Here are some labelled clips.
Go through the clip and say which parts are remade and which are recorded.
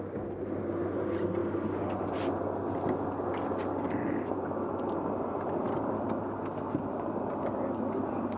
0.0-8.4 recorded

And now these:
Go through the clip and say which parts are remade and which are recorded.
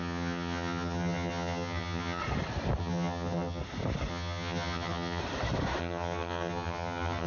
0.0-2.2 remade; 2.2-2.8 recorded; 2.8-3.6 remade; 3.6-4.1 recorded; 4.1-5.2 remade; 5.2-5.8 recorded; 5.8-7.3 remade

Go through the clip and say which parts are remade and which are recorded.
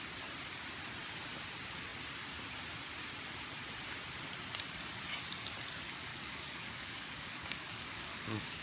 0.0-6.1 recorded; 6.1-8.6 remade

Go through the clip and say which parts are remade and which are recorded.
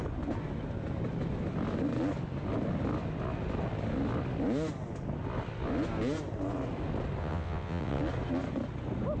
0.0-7.2 recorded; 7.2-8.0 remade; 8.0-9.2 recorded